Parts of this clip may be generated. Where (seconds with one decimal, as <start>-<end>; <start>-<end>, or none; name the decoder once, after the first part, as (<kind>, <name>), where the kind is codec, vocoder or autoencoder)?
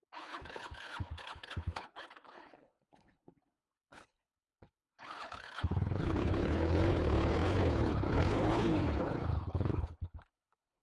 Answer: 0.0-10.8 (codec, HILCodec)